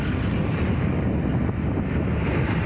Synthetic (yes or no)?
no